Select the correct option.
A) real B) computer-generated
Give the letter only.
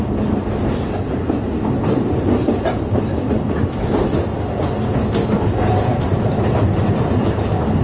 A